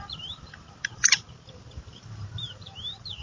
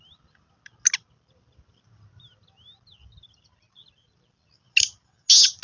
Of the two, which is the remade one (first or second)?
first